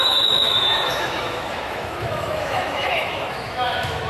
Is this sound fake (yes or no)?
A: yes